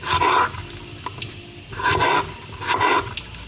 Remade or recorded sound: recorded